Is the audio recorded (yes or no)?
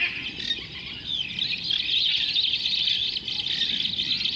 yes